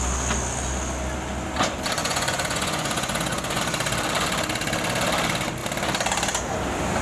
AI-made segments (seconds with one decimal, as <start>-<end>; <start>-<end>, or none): 2.0-3.6